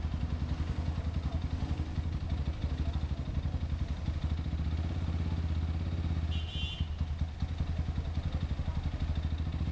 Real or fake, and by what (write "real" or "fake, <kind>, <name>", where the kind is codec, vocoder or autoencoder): real